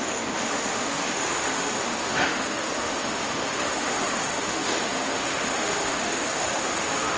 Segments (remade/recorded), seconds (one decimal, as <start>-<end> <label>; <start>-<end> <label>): 0.0-7.2 remade